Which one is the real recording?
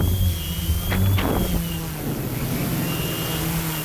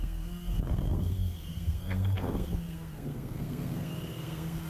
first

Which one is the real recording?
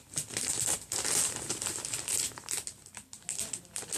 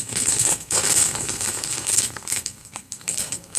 first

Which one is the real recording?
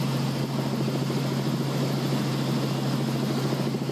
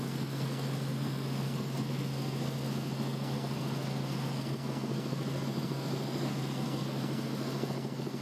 first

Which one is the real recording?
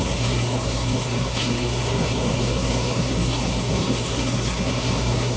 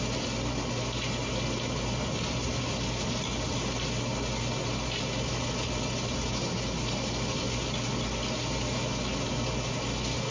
second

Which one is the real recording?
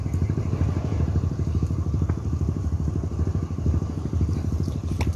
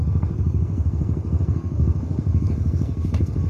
first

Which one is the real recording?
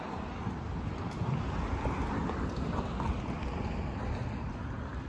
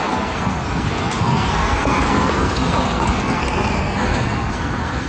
first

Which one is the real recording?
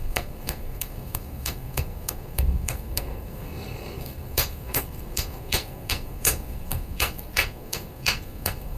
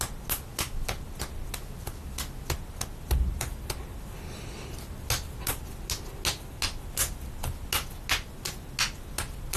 second